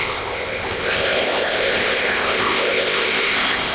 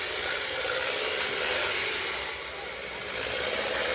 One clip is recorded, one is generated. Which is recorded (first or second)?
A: second